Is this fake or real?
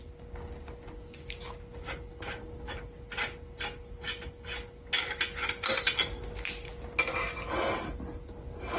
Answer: real